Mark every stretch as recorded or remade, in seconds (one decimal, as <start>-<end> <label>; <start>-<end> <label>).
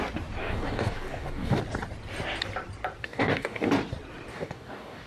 0.0-0.4 recorded; 0.4-1.6 remade; 1.6-3.0 recorded; 3.0-3.7 remade; 3.7-4.3 recorded; 4.3-5.1 remade